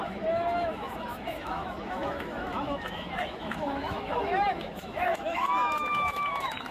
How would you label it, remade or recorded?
remade